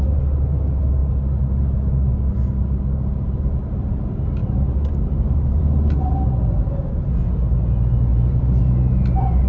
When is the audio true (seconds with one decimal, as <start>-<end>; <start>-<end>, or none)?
0.0-4.4; 5.6-8.1; 8.6-9.5